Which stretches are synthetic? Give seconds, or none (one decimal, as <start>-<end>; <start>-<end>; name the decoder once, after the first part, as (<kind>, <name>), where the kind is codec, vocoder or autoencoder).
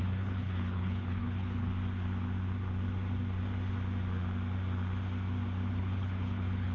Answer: 0.0-1.7 (codec, HILCodec); 5.7-6.7